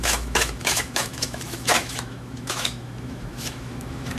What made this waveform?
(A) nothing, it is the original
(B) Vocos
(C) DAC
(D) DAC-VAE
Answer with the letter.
D